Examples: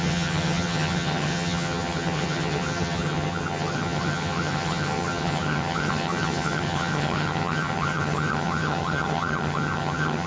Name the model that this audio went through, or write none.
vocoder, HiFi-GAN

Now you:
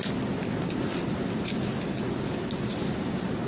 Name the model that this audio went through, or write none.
none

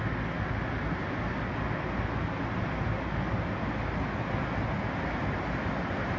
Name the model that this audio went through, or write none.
none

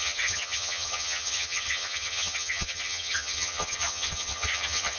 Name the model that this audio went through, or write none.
vocoder, HiFi-GAN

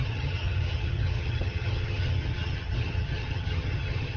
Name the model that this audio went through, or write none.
vocoder, HiFi-GAN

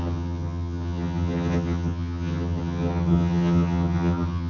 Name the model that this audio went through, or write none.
vocoder, HiFi-GAN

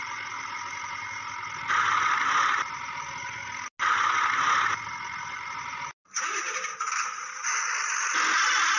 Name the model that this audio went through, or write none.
none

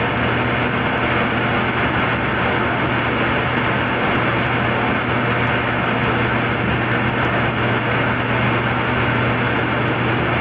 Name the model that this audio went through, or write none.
none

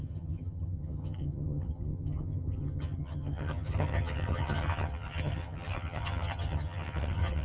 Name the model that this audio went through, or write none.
vocoder, HiFi-GAN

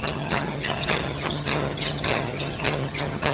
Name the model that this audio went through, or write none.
vocoder, HiFi-GAN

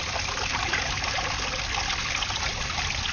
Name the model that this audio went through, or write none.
none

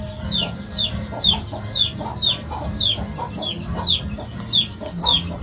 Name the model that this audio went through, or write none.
none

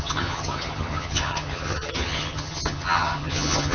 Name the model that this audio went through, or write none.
vocoder, HiFi-GAN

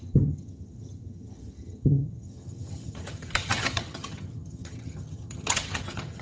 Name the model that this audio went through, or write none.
vocoder, HiFi-GAN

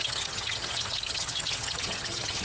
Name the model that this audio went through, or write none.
vocoder, HiFi-GAN